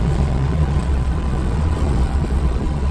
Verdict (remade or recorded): remade